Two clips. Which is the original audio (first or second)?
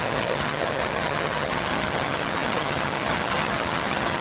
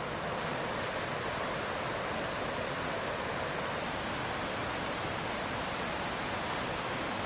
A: second